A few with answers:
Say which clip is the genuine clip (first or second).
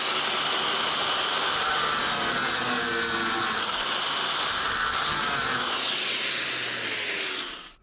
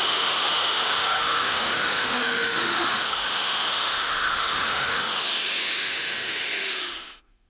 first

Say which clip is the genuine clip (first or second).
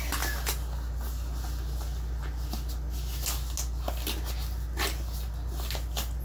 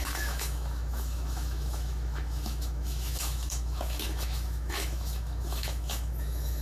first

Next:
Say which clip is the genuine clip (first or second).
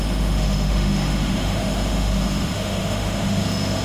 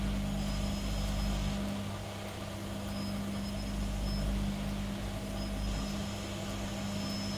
second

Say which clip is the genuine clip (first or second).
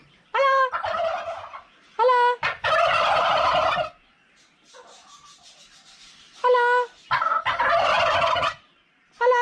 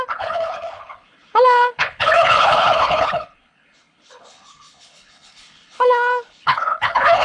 first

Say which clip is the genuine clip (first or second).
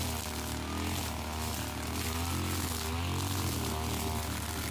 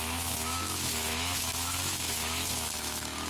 first